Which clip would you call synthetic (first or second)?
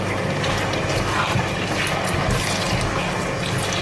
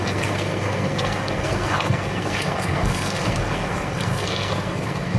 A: second